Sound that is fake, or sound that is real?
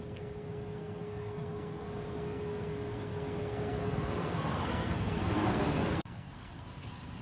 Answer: fake